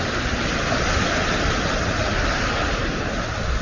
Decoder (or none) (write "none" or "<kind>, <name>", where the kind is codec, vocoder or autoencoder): none